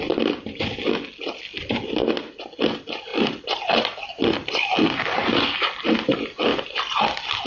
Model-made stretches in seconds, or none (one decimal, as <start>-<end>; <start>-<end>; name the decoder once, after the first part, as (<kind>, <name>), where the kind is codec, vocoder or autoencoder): 3.1-4.3 (vocoder, BigVGAN v2); 6.5-7.5